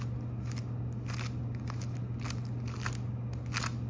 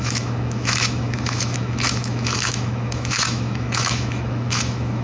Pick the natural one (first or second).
first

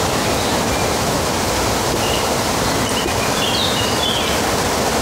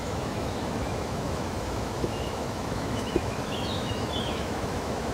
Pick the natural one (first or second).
first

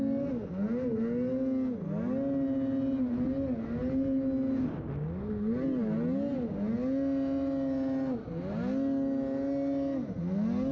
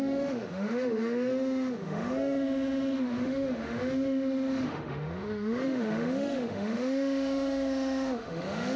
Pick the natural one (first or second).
first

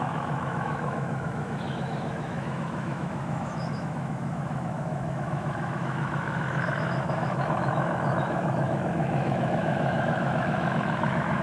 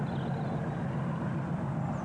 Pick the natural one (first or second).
second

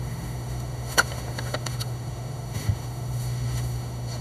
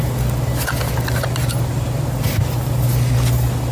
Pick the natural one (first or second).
second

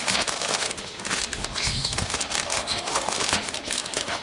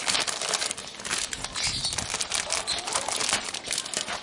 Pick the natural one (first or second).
second